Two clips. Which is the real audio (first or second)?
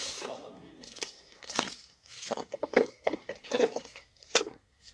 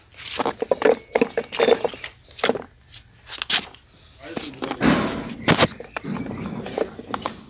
second